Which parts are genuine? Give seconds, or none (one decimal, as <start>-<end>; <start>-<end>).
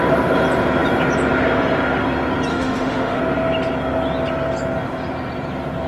0.0-2.5; 3.2-5.9